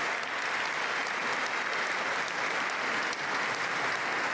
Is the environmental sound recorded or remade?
recorded